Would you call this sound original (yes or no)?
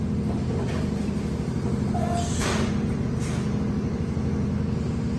yes